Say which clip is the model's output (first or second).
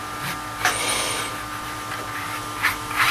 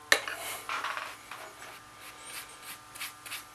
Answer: first